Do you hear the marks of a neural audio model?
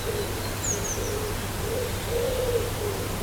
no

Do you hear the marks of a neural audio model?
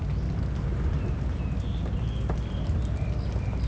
no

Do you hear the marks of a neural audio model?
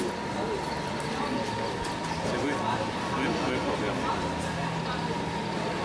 no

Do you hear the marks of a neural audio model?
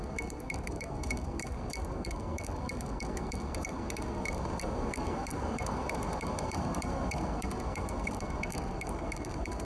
yes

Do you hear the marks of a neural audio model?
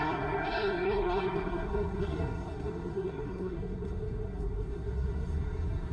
yes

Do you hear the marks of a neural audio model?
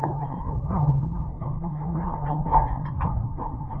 yes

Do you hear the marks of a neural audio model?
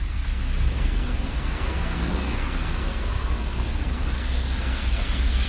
yes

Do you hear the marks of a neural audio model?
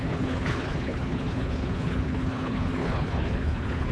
yes